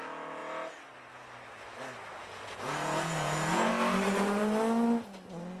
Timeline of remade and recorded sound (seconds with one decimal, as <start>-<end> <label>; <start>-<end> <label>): 0.0-2.1 recorded; 2.1-3.7 remade; 3.7-5.6 recorded